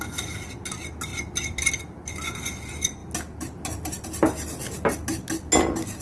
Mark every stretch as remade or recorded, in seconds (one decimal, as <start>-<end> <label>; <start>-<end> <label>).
0.0-1.1 recorded; 1.1-1.7 remade; 1.7-6.0 recorded